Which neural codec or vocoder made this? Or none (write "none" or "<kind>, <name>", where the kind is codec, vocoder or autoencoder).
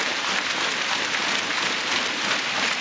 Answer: none